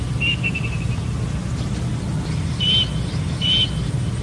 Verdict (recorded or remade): recorded